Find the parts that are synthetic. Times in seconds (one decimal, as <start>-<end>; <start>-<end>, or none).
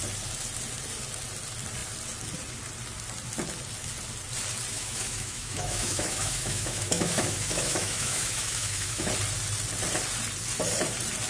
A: 4.7-9.1